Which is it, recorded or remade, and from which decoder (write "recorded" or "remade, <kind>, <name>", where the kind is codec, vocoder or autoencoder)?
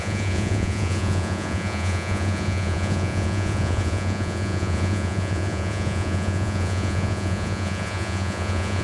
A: remade, vocoder, Vocos